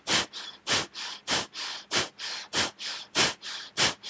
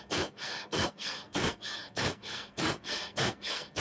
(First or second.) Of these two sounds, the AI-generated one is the second